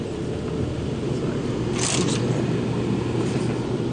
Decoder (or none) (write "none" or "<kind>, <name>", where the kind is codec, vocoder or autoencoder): none